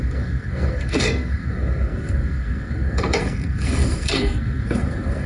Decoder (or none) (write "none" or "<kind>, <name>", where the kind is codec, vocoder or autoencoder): codec, SNAC